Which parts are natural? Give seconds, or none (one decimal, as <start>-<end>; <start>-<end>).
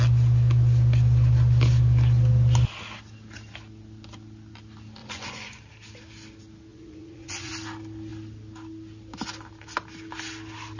0.0-5.0; 5.6-6.7; 7.5-10.8